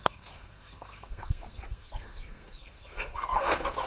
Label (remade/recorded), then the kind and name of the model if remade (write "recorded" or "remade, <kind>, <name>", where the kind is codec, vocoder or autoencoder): remade, codec, SNAC